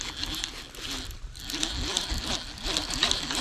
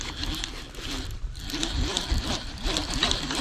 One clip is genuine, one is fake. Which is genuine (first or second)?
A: first